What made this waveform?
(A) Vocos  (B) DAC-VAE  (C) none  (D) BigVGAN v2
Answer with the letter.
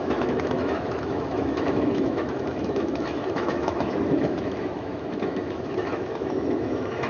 B